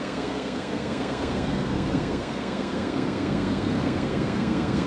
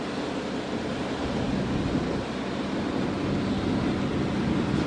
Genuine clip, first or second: second